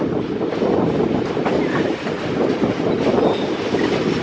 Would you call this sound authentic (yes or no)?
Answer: yes